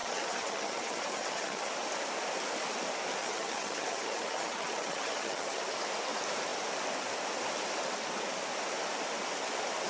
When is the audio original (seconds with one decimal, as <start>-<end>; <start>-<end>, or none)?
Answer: 1.7-3.2; 5.6-9.9